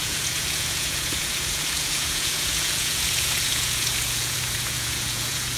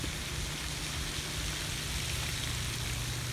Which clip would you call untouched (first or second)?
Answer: second